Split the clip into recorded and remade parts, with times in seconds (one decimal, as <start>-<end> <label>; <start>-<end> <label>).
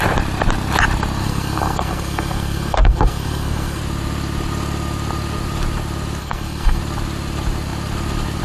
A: 0.0-1.2 recorded; 1.2-3.8 remade; 3.8-6.2 recorded; 6.2-6.8 remade; 6.8-8.4 recorded